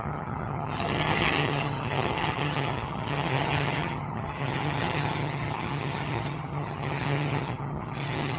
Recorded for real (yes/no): no